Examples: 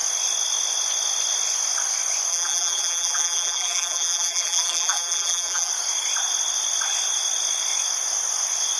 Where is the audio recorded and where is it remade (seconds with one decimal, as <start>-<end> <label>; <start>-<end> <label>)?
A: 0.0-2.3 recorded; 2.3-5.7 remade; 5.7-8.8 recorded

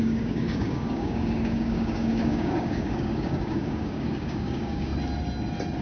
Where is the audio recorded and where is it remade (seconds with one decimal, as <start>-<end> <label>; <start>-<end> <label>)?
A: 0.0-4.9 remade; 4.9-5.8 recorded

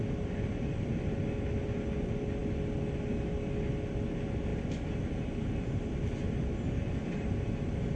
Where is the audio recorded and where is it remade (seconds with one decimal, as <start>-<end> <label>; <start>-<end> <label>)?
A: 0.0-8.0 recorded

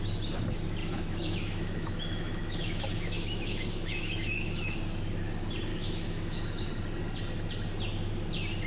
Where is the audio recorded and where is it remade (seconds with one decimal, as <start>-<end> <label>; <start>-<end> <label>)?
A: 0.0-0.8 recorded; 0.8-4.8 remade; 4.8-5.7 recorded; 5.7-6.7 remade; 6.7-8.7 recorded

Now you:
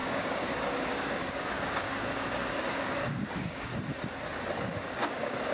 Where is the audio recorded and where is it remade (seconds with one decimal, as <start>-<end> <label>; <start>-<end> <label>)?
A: 0.0-3.7 remade; 3.7-4.5 recorded; 4.5-5.5 remade

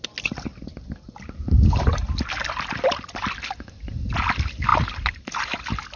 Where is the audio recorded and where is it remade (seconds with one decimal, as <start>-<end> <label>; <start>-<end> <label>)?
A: 0.0-6.0 recorded